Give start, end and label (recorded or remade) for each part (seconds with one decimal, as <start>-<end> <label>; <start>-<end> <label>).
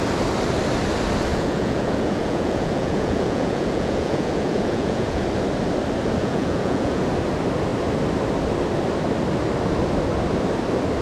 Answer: 0.0-1.3 recorded; 1.3-5.2 remade; 5.2-6.2 recorded; 6.2-7.0 remade; 7.0-11.0 recorded